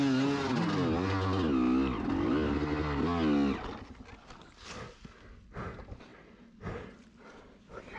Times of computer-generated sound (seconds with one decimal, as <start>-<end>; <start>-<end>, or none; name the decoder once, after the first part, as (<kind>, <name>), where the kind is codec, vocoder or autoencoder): none